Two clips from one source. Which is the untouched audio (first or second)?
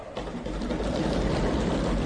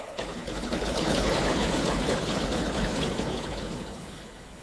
first